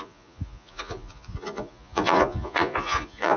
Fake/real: fake